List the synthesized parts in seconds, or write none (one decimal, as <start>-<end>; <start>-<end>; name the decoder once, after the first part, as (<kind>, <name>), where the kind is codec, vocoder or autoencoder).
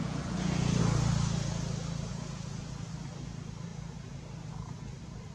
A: 0.0-0.8 (vocoder, Vocos); 2.1-2.7